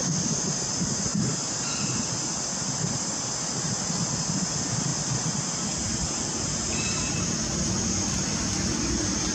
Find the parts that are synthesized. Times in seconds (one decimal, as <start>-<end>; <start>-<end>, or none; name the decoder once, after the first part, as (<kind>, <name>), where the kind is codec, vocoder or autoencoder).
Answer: none